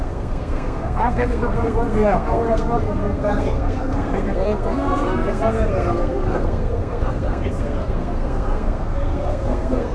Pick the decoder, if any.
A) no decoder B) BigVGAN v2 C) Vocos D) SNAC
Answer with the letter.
D